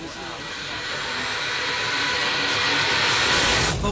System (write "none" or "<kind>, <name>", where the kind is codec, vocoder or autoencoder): none